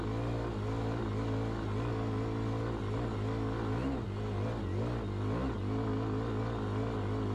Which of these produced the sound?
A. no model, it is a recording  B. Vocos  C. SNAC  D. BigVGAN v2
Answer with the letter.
A